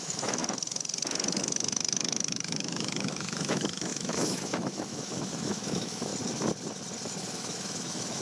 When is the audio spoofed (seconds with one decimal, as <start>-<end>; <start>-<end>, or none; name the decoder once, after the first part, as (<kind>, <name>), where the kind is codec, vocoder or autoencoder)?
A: 0.0-0.4 (autoencoder, DAC-VAE); 1.4-6.1; 7.2-8.2